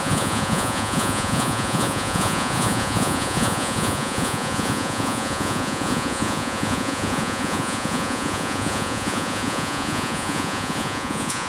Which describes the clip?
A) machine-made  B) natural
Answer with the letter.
A